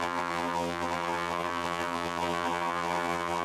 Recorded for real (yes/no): no